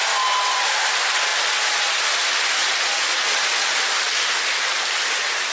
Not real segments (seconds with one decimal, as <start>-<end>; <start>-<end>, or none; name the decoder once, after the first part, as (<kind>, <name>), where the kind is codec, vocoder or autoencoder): none